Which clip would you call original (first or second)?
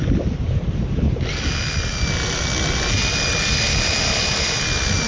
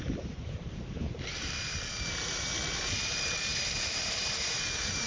first